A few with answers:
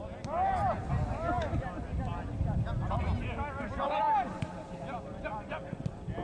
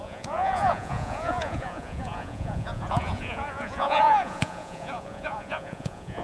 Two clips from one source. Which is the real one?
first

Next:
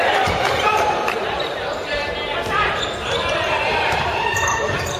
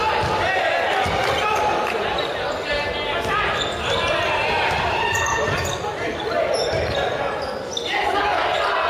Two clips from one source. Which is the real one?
second